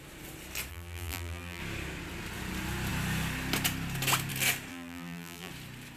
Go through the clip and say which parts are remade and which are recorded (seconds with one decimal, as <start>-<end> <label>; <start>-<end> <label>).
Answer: 0.0-0.7 recorded; 0.7-1.6 remade; 1.6-4.7 recorded; 4.7-5.5 remade; 5.5-6.0 recorded